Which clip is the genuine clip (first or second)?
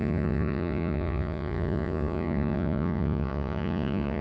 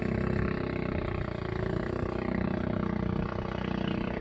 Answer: second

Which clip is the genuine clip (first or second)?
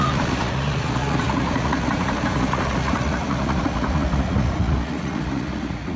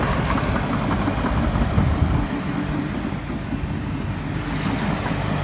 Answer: second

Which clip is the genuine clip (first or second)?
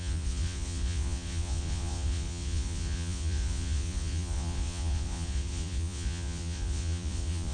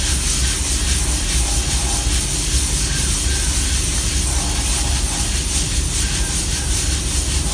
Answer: second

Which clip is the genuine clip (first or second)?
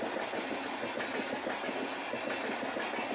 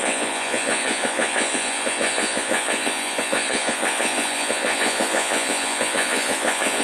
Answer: first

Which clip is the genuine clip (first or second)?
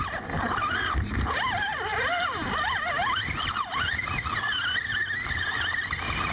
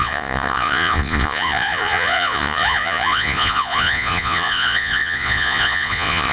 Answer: first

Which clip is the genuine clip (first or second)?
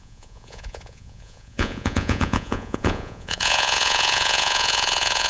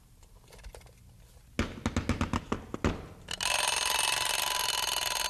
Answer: second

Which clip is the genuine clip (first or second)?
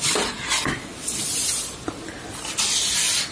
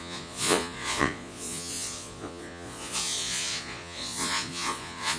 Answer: first